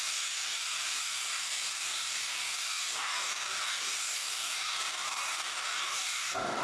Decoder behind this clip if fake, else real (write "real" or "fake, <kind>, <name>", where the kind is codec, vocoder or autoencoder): fake, codec, DAC